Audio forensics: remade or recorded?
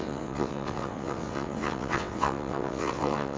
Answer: remade